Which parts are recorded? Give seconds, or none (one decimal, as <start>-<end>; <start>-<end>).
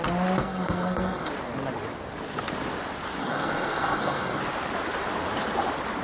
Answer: 0.0-0.4; 1.3-3.2; 4.4-6.0